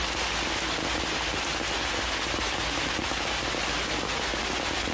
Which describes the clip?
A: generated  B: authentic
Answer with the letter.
B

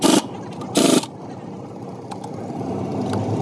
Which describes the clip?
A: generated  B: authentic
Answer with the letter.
B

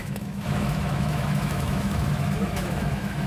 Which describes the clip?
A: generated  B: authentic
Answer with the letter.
A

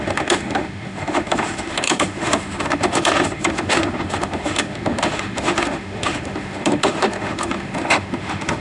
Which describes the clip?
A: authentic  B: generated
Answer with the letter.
B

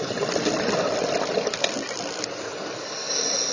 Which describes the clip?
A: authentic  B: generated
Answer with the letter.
A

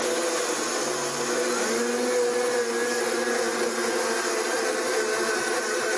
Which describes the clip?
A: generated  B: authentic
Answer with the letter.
B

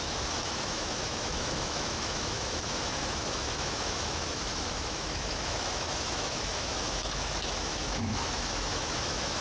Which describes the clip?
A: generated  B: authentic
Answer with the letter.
A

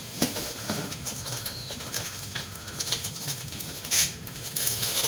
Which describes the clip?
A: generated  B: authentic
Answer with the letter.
A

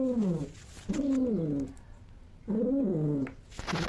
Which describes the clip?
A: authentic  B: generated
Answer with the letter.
A